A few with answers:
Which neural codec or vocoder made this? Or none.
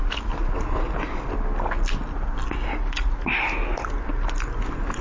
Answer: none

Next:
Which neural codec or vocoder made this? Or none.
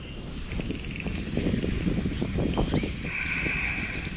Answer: none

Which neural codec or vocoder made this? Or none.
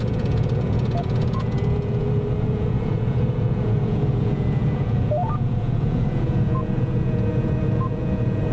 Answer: vocoder, Vocos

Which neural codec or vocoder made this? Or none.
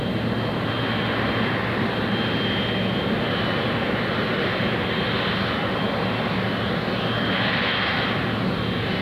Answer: none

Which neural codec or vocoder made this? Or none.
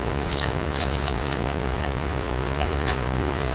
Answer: vocoder, Vocos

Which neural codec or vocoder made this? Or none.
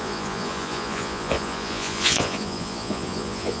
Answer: vocoder, Vocos